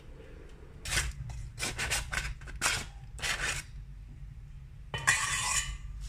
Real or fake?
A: real